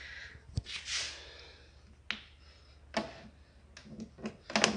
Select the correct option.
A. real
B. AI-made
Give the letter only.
A